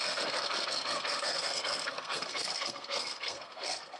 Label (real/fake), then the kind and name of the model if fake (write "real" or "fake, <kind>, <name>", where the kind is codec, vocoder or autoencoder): fake, codec, SNAC